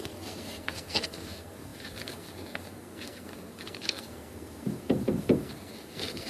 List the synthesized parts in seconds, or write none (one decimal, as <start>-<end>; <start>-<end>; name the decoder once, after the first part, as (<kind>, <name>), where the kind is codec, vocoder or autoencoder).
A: 0.0-6.3 (codec, SNAC)